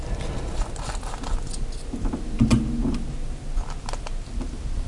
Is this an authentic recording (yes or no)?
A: yes